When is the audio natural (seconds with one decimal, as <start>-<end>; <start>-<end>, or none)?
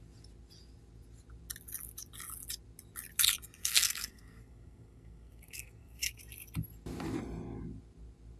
0.0-3.6; 6.2-8.4